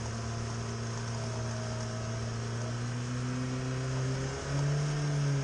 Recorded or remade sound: recorded